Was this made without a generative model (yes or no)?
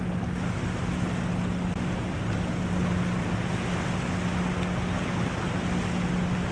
yes